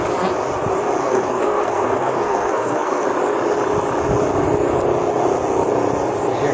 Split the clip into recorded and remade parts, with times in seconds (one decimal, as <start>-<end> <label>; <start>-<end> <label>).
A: 0.0-1.0 recorded; 1.0-3.1 remade; 3.1-6.5 recorded